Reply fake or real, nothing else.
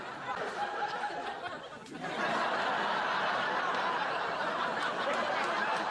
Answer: real